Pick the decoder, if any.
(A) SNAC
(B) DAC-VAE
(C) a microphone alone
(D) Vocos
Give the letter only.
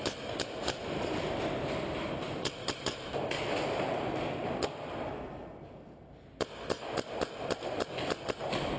C